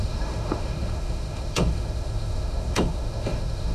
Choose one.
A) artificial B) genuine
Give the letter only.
A